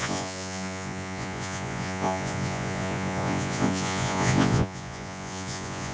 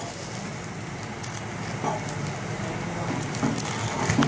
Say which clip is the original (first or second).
second